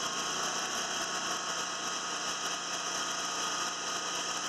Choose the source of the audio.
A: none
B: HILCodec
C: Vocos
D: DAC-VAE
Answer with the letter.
A